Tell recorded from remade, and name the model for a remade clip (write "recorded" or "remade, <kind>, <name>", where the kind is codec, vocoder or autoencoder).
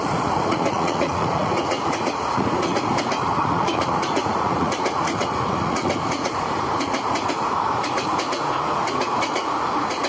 remade, vocoder, Vocos